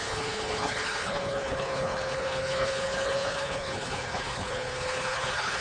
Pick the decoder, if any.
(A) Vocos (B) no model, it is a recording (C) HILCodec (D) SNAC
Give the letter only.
C